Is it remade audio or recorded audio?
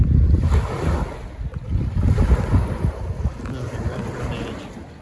recorded